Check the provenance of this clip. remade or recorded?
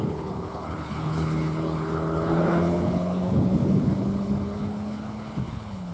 remade